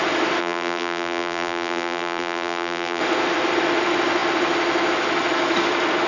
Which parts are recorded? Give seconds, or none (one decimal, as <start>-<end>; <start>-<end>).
0.0-0.4; 3.0-6.1